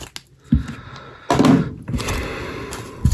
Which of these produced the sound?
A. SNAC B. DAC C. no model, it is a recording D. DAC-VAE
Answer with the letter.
C